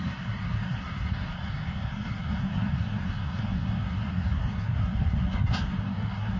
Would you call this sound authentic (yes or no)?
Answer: no